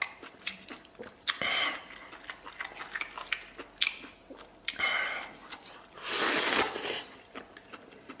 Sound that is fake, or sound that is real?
real